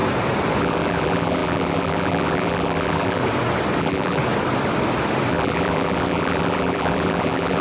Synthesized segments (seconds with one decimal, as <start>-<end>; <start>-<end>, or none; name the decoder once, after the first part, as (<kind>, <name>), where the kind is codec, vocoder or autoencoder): 0.6-3.2 (vocoder, BigVGAN v2); 3.8-4.2; 5.3-7.6